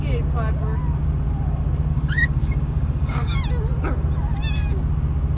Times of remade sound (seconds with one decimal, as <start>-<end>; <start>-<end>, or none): 1.9-3.4